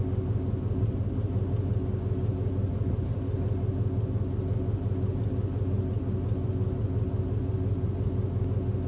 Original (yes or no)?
yes